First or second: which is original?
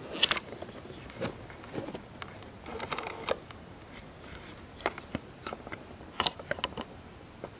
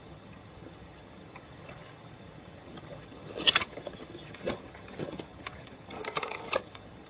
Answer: first